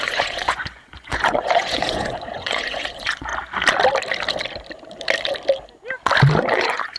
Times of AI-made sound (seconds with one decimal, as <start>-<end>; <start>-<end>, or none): 0.0-3.3; 6.4-7.0